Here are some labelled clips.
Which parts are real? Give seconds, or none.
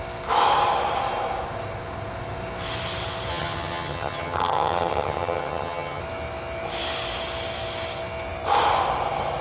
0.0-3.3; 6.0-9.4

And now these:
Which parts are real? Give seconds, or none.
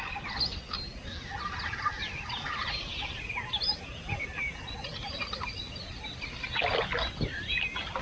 0.0-8.0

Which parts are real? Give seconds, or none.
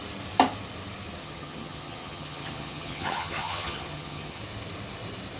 0.0-1.2; 4.4-5.4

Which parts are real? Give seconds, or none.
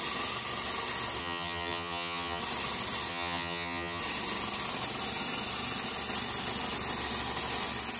0.0-1.2; 2.4-3.1; 4.0-8.0